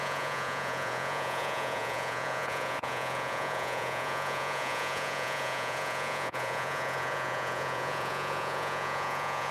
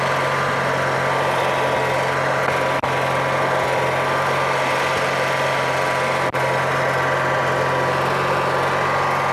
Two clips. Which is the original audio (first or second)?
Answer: second